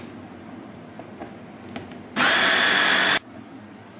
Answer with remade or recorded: recorded